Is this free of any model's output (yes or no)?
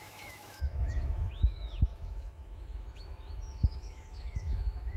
no